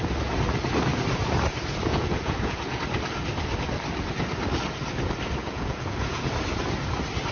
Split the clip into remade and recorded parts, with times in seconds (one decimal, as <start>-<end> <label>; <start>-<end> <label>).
0.0-1.9 recorded; 1.9-2.8 remade; 2.8-5.4 recorded; 5.4-6.3 remade; 6.3-7.3 recorded